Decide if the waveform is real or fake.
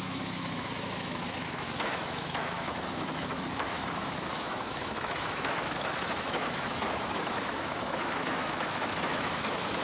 fake